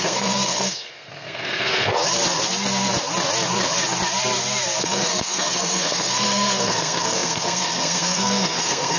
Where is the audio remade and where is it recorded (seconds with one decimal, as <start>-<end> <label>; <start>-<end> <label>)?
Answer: 0.0-2.0 remade; 2.0-4.8 recorded; 4.8-9.0 remade